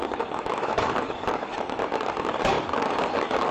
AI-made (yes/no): yes